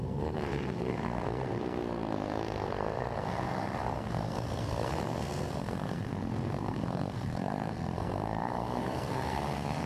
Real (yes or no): no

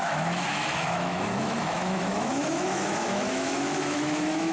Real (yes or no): no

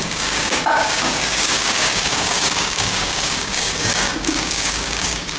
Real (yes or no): no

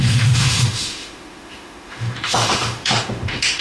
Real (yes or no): no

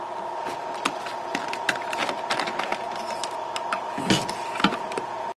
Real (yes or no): yes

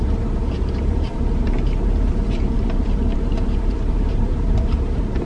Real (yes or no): no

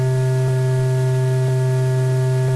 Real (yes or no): yes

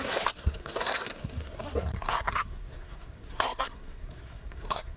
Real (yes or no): no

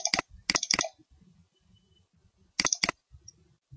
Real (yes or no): yes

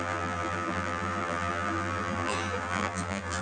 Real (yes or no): no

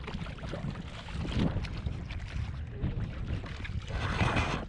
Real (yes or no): yes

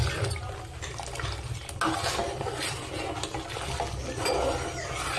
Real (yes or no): yes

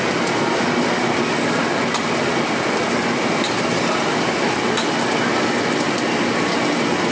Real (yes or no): yes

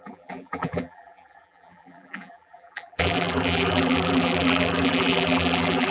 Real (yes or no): no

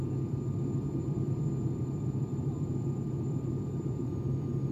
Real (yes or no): no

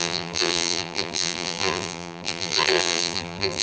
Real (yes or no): no